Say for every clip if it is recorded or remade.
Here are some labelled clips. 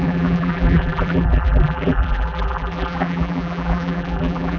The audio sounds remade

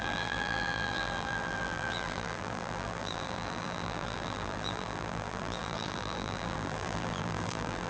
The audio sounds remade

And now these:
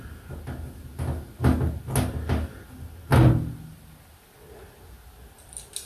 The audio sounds recorded